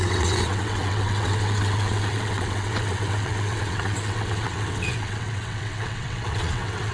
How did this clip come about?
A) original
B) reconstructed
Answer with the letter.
B